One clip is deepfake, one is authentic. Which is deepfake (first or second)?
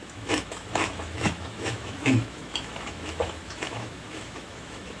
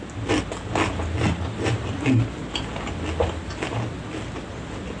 first